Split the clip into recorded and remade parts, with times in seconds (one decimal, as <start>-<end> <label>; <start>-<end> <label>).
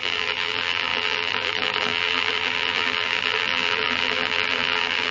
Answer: 0.0-5.1 remade